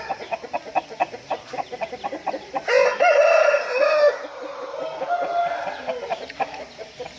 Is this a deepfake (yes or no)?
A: no